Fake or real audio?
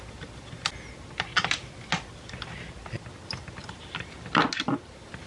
real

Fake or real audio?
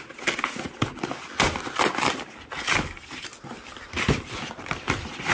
real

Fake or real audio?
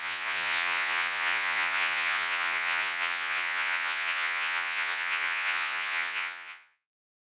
fake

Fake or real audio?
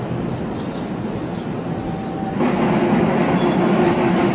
real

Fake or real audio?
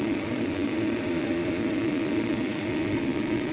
fake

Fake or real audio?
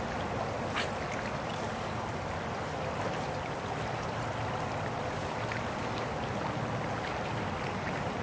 real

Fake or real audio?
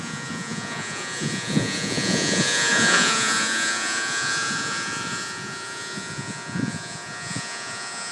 fake